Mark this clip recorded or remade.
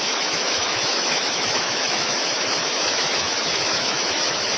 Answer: remade